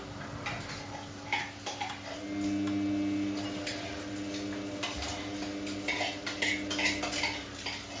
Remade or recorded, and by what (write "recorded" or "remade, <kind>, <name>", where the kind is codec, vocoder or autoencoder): recorded